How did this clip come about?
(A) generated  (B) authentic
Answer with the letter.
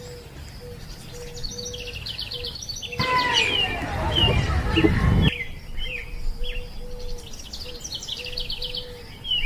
B